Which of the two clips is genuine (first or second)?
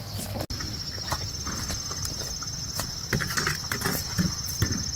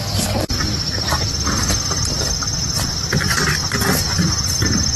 first